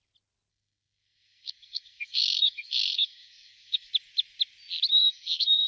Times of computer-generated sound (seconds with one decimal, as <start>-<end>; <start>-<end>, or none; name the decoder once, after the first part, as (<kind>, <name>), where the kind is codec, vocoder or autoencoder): 0.5-3.9 (codec, SNAC); 4.9-5.7